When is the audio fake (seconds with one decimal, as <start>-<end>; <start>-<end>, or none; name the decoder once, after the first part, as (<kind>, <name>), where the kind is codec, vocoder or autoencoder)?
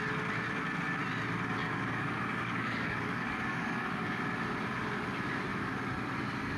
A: 1.6-4.2 (codec, DAC)